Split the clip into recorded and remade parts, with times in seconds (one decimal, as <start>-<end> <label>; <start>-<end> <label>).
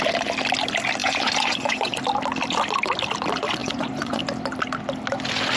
0.0-1.0 recorded; 1.0-2.0 remade; 2.0-3.6 recorded; 3.6-4.2 remade; 4.2-5.6 recorded